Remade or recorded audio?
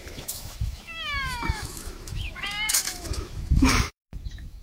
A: remade